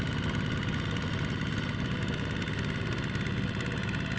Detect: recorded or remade recorded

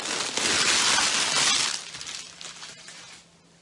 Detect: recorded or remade recorded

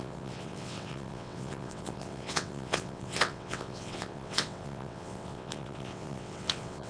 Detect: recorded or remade remade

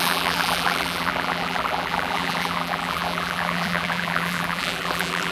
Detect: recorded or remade remade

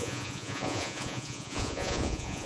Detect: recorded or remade remade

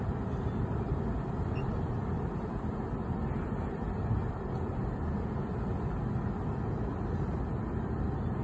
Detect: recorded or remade recorded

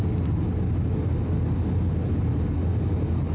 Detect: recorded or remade recorded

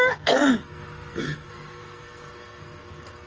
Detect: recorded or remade remade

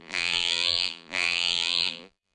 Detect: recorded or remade remade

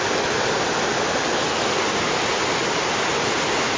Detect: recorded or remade recorded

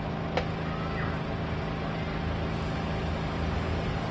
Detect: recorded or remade recorded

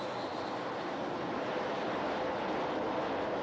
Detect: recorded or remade recorded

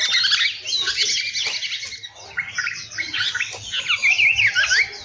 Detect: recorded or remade recorded